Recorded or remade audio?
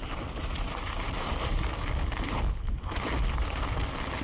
recorded